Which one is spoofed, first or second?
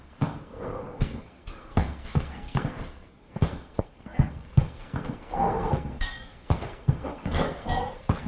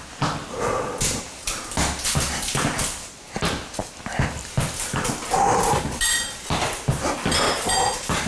first